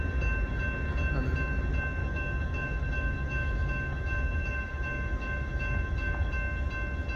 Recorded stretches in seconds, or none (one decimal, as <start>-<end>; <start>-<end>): 0.0-2.0; 6.3-7.2